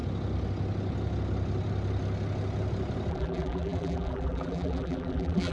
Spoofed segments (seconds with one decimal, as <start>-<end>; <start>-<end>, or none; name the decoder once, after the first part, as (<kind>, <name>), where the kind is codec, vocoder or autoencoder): 3.1-5.5 (vocoder, BigVGAN v2)